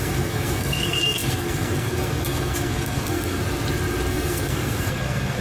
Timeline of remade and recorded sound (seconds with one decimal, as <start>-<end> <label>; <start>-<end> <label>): 0.0-3.4 remade; 3.4-4.1 recorded; 4.1-5.4 remade